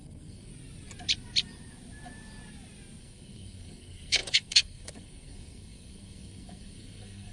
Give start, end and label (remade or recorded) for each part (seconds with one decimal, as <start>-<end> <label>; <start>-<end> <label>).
0.0-0.5 remade; 0.5-3.0 recorded; 3.0-7.3 remade